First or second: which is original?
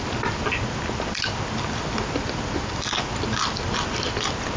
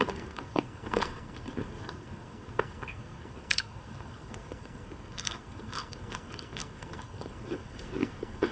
first